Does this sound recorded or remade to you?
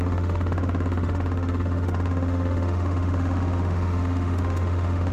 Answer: remade